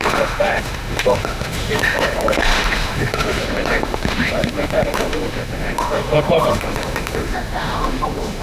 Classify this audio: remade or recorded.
remade